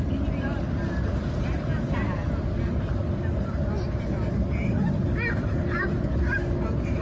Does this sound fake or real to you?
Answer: real